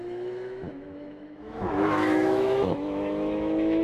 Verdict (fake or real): fake